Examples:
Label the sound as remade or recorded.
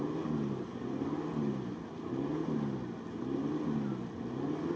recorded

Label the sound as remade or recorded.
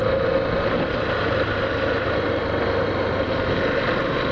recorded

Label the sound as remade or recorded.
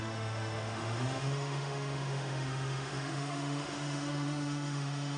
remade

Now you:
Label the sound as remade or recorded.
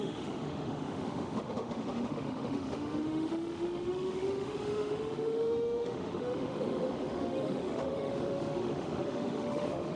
remade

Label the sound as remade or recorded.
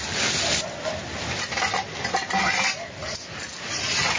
recorded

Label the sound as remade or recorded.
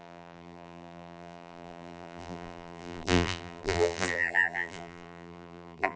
remade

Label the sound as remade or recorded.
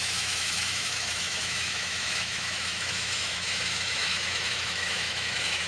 remade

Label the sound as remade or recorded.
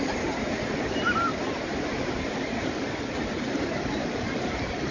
remade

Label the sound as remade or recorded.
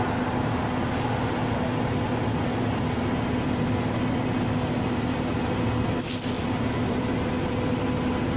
recorded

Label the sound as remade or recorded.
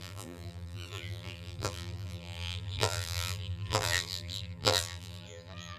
remade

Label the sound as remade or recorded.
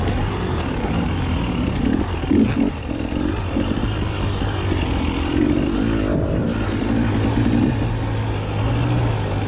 recorded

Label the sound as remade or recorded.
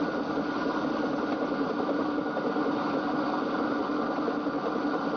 recorded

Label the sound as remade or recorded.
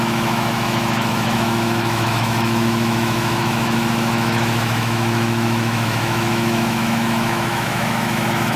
remade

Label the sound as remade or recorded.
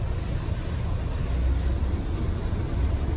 recorded